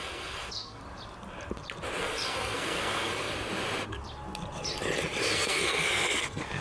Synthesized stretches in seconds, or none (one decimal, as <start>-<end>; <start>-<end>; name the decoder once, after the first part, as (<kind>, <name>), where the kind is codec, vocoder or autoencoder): 0.0-0.8 (codec, SNAC); 2.0-3.3; 5.2-6.6